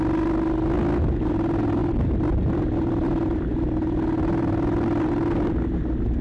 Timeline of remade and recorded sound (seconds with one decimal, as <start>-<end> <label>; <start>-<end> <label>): 0.0-6.2 recorded